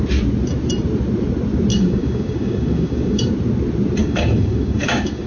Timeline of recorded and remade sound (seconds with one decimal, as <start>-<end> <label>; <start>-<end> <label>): 0.0-1.7 recorded; 1.7-3.3 remade; 3.3-4.0 recorded; 4.0-5.3 remade